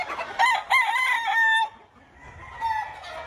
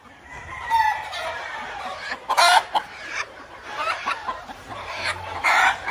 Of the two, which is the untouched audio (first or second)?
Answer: first